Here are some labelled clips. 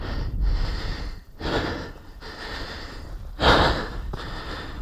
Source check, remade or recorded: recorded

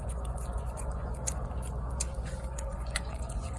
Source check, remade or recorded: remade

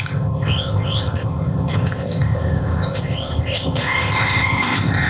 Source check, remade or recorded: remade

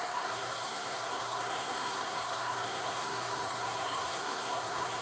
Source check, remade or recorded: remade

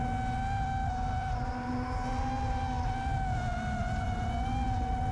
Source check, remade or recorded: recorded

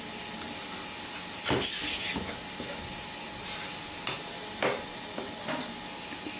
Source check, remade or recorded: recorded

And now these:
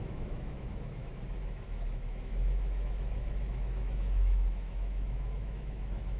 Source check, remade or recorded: remade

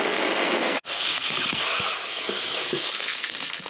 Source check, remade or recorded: remade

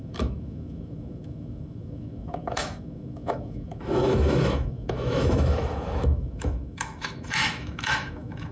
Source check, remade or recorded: remade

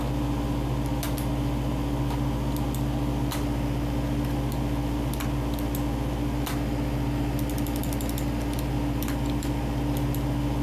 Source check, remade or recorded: recorded